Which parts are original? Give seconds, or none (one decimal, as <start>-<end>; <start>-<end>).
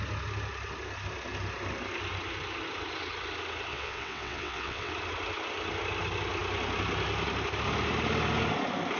0.0-3.7; 4.9-9.0